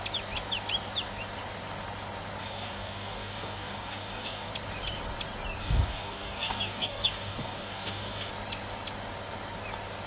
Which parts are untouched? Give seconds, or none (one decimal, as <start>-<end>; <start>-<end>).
0.0-2.4; 4.5-5.6; 8.3-10.1